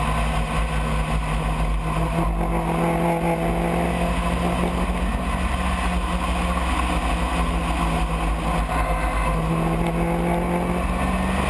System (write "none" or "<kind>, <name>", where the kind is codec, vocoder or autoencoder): none